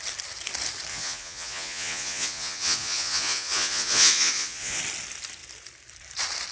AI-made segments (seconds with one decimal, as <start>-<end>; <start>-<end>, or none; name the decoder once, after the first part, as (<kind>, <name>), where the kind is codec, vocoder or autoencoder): 0.9-4.8 (vocoder, Vocos)